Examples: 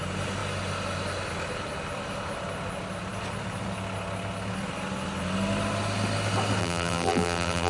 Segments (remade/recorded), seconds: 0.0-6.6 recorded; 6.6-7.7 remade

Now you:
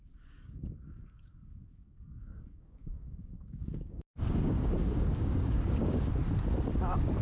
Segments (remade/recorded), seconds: 0.0-0.4 recorded; 0.4-1.4 remade; 1.4-1.8 recorded; 1.8-6.1 remade; 6.1-7.2 recorded

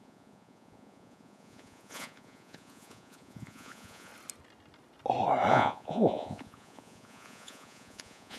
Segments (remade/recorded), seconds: 0.0-4.1 remade; 4.1-5.5 recorded; 5.5-8.4 remade

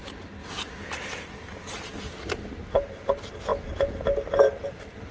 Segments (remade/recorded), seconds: 0.0-5.1 recorded